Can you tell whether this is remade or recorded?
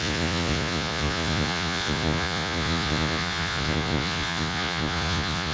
remade